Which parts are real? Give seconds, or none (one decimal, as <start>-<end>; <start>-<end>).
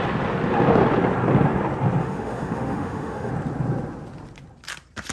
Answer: 0.0-2.0; 3.3-5.1